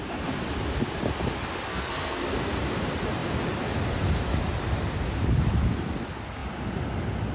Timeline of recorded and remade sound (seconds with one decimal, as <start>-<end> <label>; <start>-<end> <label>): 0.0-1.7 recorded; 1.7-2.2 remade; 2.2-7.3 recorded